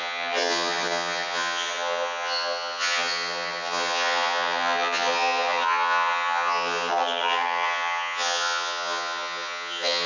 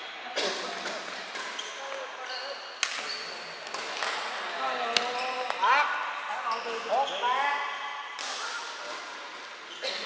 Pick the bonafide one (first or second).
second